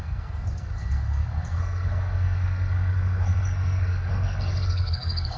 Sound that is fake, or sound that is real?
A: fake